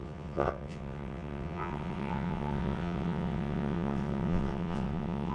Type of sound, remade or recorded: remade